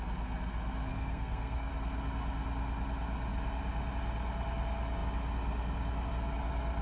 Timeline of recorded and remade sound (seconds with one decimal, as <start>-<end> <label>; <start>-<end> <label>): 0.0-0.9 recorded; 0.9-1.7 remade; 1.7-6.8 recorded